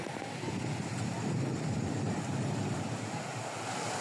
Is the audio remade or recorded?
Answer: remade